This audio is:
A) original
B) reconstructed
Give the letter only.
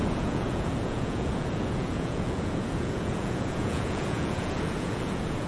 B